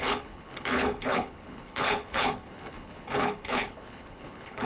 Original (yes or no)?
no